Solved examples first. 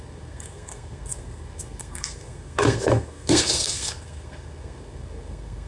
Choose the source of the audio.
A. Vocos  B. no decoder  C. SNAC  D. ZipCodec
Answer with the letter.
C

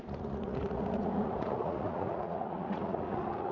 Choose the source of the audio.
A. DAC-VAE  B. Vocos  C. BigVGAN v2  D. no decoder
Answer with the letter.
B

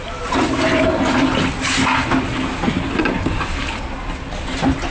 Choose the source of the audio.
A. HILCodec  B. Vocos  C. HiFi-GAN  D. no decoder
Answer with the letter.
D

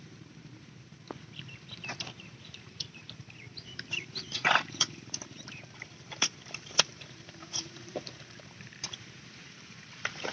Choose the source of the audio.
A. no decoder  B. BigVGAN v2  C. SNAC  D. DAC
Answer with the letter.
B